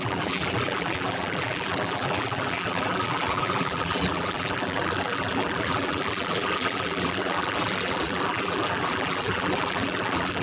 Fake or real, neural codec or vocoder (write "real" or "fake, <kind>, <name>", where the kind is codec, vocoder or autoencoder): fake, vocoder, BigVGAN v2